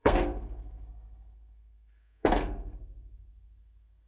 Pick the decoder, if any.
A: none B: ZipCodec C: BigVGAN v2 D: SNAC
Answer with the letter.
D